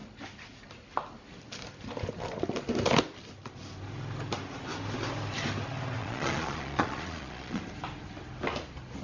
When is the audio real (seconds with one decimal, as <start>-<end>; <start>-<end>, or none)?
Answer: 0.0-6.0; 7.6-9.0